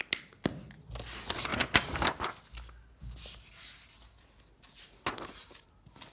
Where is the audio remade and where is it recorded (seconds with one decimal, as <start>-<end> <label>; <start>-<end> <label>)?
0.0-1.5 recorded; 1.5-2.1 remade; 2.1-6.1 recorded